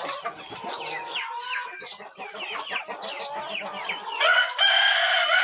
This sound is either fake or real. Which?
real